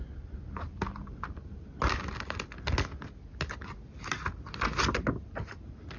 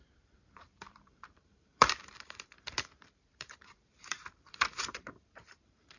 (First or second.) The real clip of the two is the first